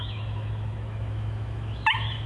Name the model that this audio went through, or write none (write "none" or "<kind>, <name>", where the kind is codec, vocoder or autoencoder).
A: autoencoder, DAC-VAE